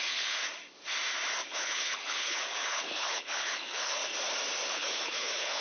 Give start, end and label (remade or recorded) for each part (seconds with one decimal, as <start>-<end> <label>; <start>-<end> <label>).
0.0-0.4 remade; 0.4-1.5 recorded; 1.5-4.0 remade; 4.0-4.7 recorded; 4.7-5.6 remade